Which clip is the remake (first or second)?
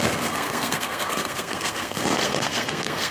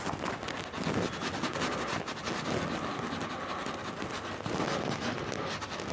first